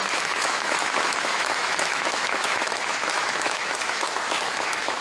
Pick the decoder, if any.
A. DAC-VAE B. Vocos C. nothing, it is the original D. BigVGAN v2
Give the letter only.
A